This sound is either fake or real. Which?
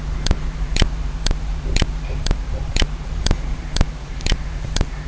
fake